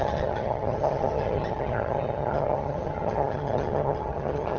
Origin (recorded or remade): remade